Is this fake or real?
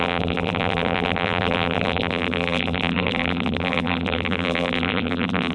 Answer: fake